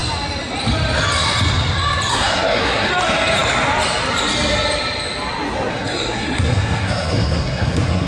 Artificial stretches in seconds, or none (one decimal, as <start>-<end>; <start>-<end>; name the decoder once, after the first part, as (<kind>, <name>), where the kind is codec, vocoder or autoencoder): 2.1-2.9 (codec, SNAC); 5.7-8.1